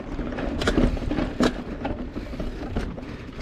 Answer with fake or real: real